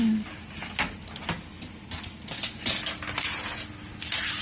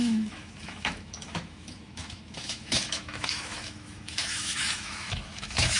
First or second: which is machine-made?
second